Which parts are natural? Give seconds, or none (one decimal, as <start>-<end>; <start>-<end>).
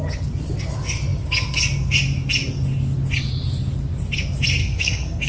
0.0-4.6